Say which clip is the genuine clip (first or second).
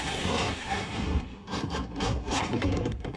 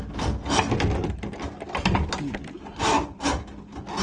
second